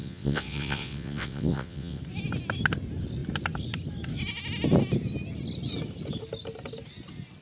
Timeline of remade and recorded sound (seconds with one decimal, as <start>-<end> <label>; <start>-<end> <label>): 0.0-2.0 remade; 2.0-7.4 recorded